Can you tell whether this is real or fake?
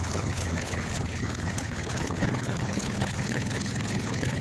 fake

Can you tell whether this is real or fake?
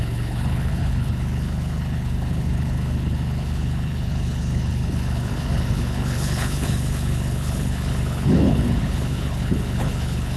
fake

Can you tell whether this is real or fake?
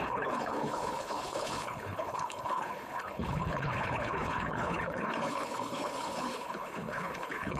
fake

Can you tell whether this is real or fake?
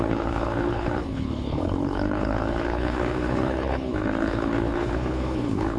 fake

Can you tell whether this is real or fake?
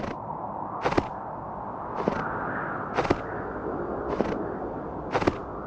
real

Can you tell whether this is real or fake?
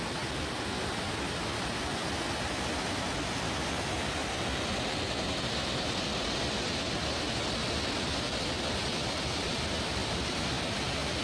real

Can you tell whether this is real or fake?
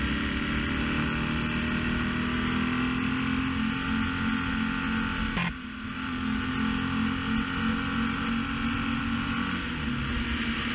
real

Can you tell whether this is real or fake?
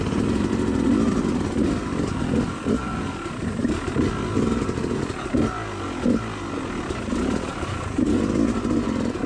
real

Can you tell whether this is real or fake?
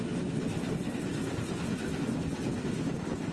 real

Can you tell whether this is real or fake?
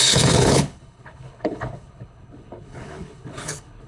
fake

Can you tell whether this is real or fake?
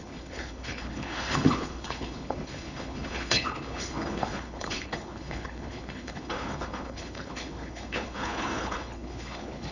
fake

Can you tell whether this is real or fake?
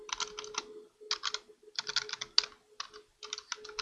real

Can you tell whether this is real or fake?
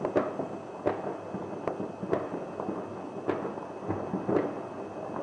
real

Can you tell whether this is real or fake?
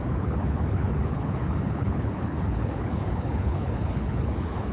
fake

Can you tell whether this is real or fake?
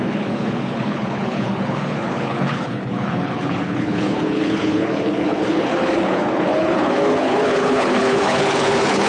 fake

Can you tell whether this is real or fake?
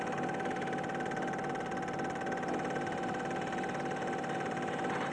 real